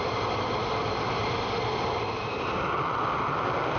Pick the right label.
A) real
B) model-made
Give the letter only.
A